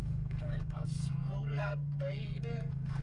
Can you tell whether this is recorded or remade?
remade